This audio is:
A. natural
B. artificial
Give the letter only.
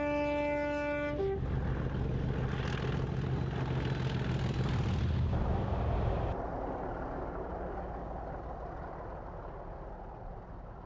A